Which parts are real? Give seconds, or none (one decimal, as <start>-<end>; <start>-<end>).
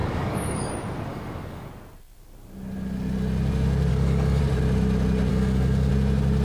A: 0.7-1.1; 1.7-3.9; 4.4-5.3; 5.9-6.4